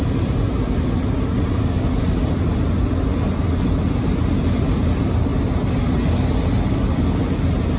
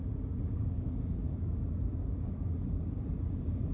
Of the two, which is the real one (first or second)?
first